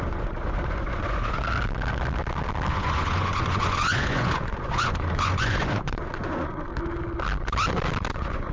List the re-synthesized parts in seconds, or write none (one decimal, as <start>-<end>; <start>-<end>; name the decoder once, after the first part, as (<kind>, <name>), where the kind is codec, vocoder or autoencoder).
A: 0.0-1.4 (vocoder, Vocos); 2.7-6.7; 8.1-8.5